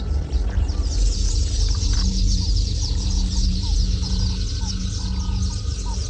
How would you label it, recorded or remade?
recorded